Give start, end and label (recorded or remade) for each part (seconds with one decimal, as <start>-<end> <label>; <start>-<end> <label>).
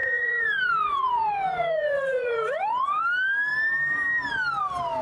0.0-3.0 remade; 3.0-5.0 recorded